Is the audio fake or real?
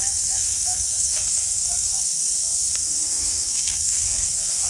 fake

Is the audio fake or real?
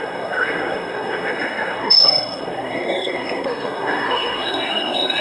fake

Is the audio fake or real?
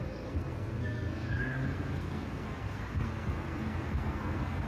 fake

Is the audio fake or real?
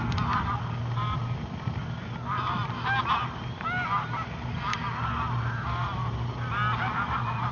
real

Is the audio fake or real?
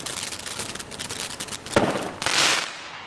real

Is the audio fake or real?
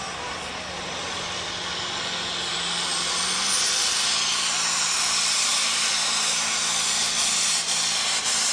real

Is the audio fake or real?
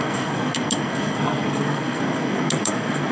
fake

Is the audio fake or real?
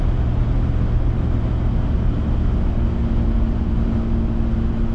real